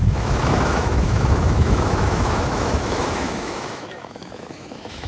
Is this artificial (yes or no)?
yes